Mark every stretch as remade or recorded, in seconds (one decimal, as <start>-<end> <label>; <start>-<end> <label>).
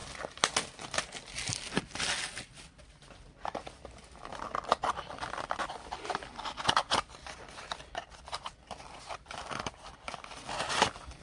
0.0-11.2 recorded